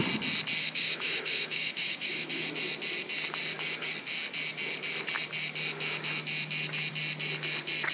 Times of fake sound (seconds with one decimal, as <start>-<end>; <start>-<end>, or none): 0.6-2.4